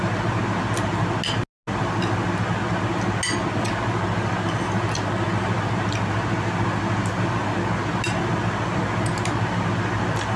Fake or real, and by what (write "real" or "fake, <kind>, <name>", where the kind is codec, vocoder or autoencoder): real